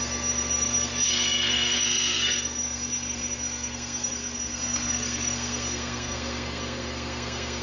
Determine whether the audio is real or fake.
fake